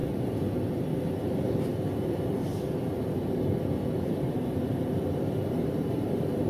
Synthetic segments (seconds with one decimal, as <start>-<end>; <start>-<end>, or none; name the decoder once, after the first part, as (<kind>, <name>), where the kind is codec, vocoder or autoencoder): 2.1-2.5 (vocoder, BigVGAN v2); 3.9-6.5